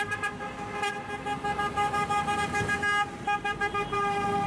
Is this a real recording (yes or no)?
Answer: yes